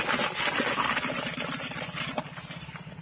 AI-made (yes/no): no